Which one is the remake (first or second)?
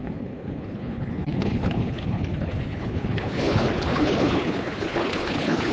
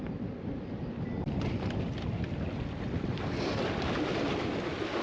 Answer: first